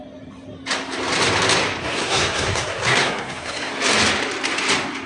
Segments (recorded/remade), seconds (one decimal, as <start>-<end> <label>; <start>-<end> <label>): 0.0-1.8 recorded; 1.8-3.7 remade; 3.7-5.1 recorded